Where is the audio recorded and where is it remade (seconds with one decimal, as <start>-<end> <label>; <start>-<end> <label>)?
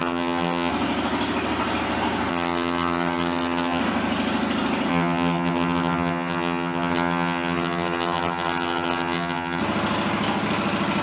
0.0-0.7 remade; 0.7-2.3 recorded; 2.3-3.8 remade; 3.8-4.9 recorded; 4.9-9.6 remade; 9.6-11.0 recorded